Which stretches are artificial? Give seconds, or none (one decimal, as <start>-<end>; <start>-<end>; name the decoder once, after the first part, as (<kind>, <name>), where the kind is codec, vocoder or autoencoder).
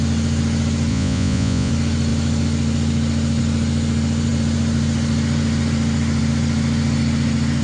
0.9-1.7 (vocoder, Vocos)